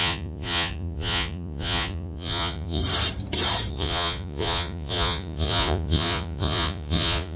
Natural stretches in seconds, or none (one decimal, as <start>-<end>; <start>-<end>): 2.8-3.7